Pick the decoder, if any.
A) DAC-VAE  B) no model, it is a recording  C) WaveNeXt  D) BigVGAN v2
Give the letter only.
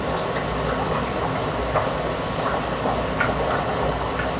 B